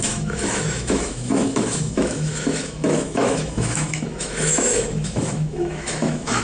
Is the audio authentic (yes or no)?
no